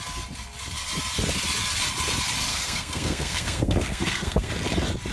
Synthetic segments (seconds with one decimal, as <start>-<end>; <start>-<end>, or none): 2.5-4.5